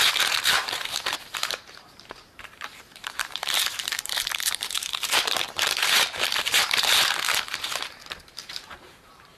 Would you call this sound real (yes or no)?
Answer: no